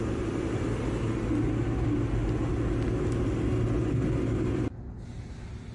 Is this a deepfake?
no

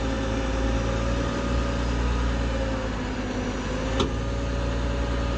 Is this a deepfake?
no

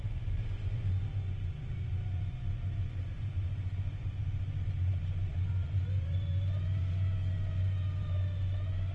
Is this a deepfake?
yes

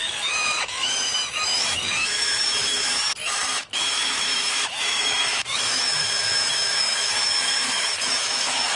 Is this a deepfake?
yes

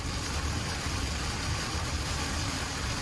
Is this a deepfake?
yes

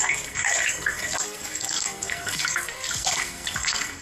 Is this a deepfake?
yes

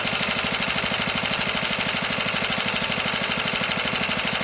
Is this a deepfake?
no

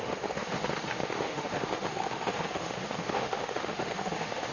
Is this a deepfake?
yes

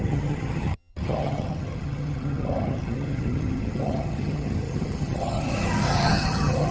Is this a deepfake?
yes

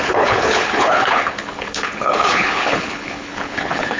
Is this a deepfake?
yes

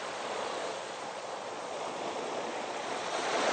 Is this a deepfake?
yes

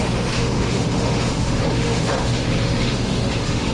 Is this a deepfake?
yes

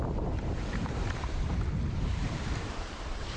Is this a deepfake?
yes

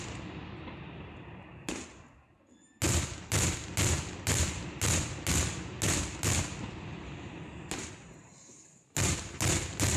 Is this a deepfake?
no